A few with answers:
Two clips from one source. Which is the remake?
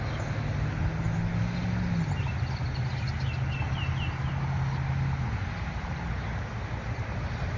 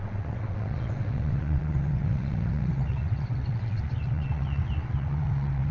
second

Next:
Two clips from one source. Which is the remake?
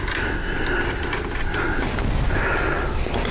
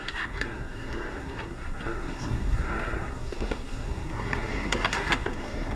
second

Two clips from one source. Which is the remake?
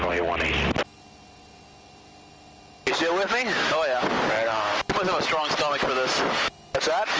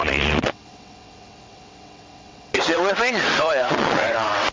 second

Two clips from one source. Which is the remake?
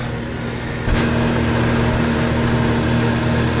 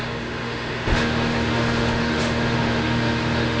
second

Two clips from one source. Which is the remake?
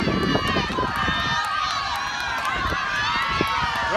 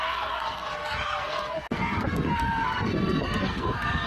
second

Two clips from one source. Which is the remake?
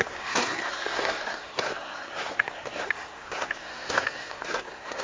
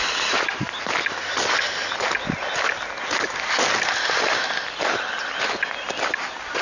first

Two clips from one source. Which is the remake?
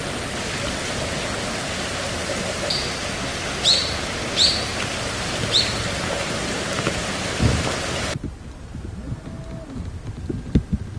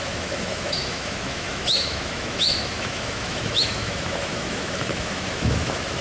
second